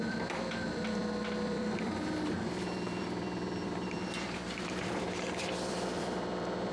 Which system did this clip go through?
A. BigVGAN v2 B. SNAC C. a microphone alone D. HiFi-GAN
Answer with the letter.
A